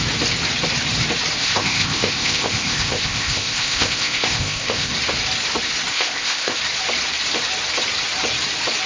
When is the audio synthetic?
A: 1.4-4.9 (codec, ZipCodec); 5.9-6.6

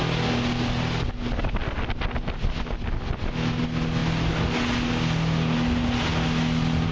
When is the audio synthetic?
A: none

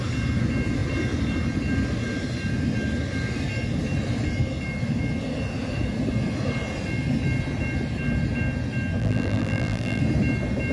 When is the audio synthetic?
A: 9.0-10.0 (vocoder, BigVGAN v2)

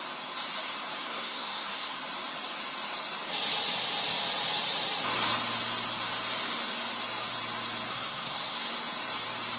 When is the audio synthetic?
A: 1.0-2.0 (codec, SNAC); 7.9-8.7

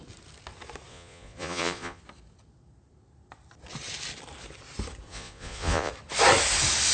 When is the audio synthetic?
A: 0.9-2.0 (vocoder, Vocos); 5.1-5.9

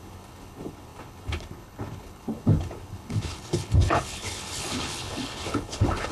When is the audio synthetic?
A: 0.0-6.1 (codec, HILCodec)

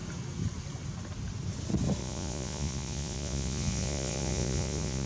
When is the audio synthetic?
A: 2.0-5.1 (vocoder, Vocos)

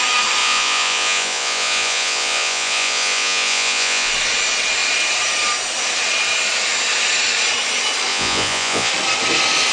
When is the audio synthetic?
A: 0.4-4.1 (vocoder, Vocos); 8.1-8.9